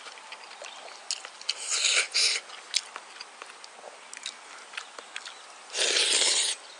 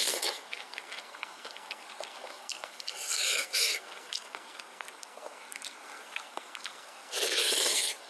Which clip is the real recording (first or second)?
first